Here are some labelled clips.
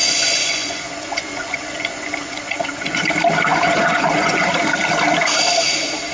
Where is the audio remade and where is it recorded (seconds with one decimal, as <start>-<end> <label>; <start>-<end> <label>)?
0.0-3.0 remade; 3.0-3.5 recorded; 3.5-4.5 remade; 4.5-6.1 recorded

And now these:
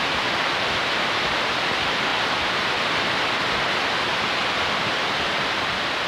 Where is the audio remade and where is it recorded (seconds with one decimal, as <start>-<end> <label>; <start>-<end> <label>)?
0.0-6.1 recorded

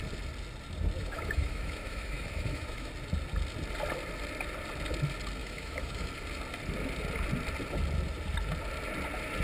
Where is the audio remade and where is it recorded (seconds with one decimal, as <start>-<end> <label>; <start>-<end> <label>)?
0.0-1.0 recorded; 1.0-2.9 remade; 2.9-5.4 recorded; 5.4-6.1 remade; 6.1-9.4 recorded